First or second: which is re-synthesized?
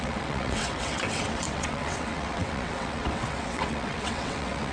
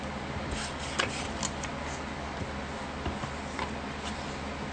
first